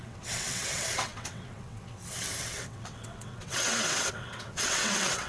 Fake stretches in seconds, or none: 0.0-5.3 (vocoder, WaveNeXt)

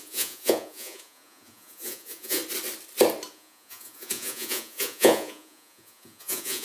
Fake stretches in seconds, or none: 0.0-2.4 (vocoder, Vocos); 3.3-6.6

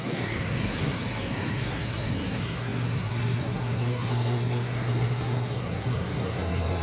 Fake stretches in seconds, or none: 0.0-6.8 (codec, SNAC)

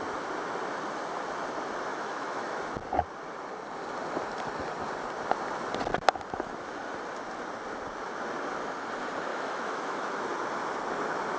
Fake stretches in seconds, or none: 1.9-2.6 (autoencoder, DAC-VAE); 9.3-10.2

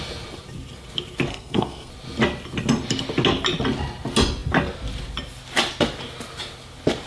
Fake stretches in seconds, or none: 1.3-1.9 (codec, SNAC)

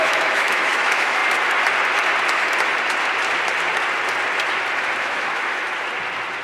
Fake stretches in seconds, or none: 0.0-1.2 (autoencoder, DAC-VAE); 5.0-5.4